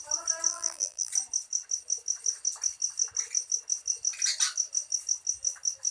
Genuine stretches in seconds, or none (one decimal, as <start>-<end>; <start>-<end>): 0.0-0.5; 1.1-5.9